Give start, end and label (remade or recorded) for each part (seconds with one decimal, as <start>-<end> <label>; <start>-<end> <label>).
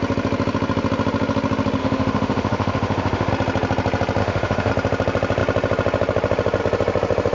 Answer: 0.0-1.8 recorded; 1.8-3.3 remade; 3.3-4.2 recorded; 4.2-4.7 remade; 4.7-7.3 recorded